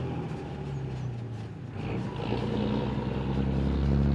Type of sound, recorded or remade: recorded